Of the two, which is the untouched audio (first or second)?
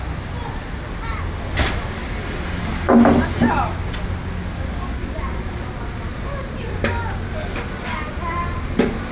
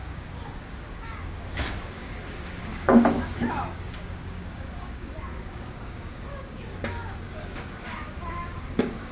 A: first